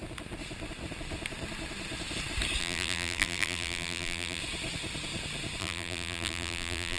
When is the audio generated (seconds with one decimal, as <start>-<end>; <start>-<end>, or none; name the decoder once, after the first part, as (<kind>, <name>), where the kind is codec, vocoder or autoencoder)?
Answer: 2.6-4.4 (vocoder, BigVGAN v2); 5.6-7.0